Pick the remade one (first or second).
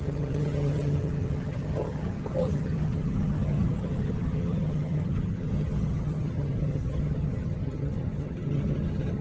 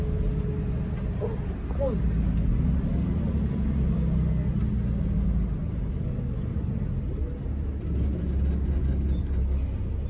first